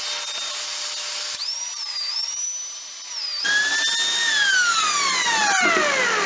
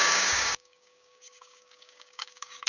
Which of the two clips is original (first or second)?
first